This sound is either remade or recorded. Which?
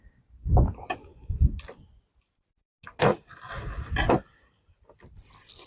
recorded